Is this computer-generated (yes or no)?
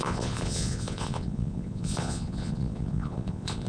yes